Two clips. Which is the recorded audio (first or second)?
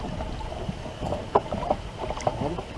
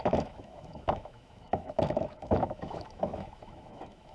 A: first